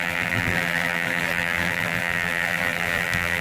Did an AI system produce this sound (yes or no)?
yes